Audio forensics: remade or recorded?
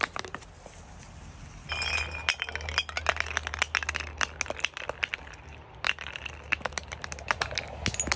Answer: recorded